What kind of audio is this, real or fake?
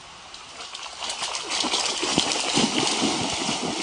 real